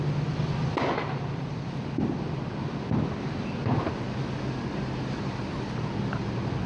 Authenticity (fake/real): real